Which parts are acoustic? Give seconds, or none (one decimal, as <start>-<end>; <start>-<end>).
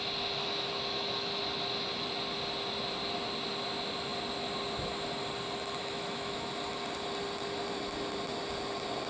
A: 0.0-0.4; 1.4-5.8; 6.5-9.1